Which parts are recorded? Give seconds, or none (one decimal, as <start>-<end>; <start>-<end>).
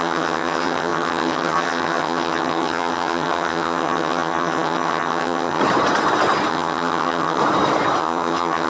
5.6-6.5; 7.4-8.0